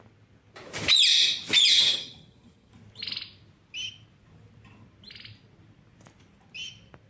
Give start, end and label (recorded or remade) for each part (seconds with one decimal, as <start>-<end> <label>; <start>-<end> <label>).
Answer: 0.0-1.7 recorded; 1.7-2.7 remade; 2.7-7.1 recorded